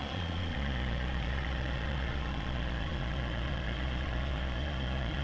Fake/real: fake